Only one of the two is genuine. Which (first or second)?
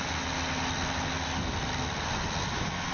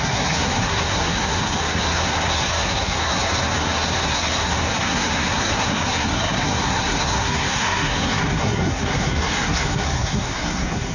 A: first